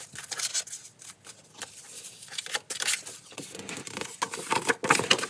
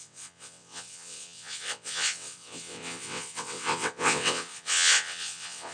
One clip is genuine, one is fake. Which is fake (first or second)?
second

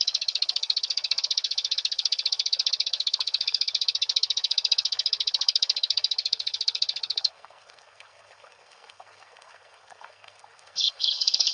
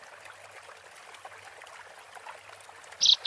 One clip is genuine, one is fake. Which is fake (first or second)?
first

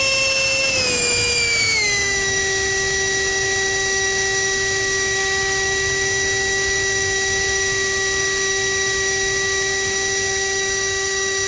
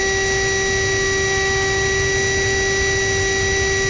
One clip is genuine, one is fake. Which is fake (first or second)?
first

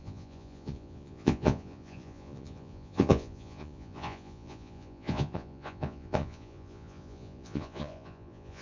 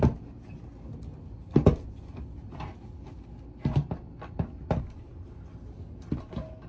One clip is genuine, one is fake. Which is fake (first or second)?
first